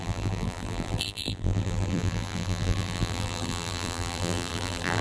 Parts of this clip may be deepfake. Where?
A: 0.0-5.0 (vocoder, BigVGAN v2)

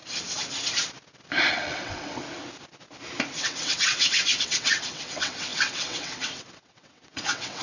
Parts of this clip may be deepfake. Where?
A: 1.5-2.2 (vocoder, WaveNeXt); 3.4-7.6

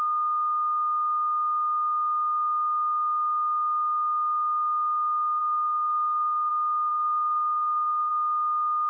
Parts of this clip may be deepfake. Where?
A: 5.4-6.5 (codec, SNAC); 6.9-8.1

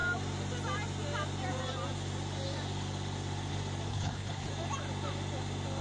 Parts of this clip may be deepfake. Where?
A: 3.9-4.5 (codec, HILCodec)

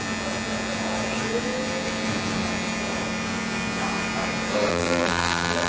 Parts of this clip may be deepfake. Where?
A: 4.7-5.7 (vocoder, BigVGAN v2)